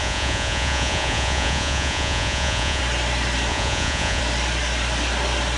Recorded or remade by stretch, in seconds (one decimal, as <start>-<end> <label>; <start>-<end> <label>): 0.0-2.8 remade; 2.8-3.5 recorded; 3.5-4.2 remade; 4.2-5.6 recorded